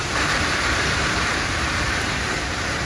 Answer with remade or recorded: remade